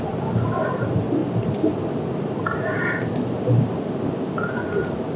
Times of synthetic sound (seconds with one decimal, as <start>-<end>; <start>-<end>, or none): none